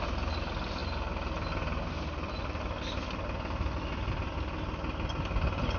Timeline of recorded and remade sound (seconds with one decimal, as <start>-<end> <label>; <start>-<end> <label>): 0.0-5.8 recorded